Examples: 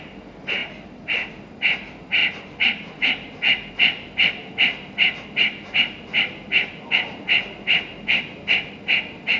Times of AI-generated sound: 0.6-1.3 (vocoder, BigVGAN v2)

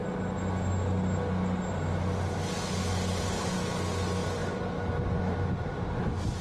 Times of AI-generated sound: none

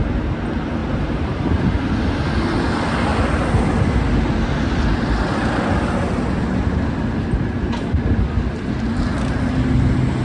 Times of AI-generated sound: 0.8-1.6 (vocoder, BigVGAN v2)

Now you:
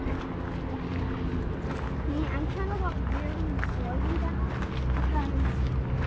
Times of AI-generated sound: none